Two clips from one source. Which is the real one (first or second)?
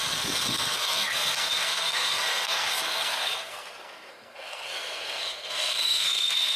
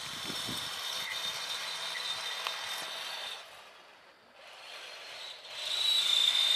second